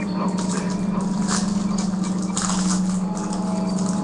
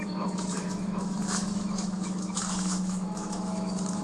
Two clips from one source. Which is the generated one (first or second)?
second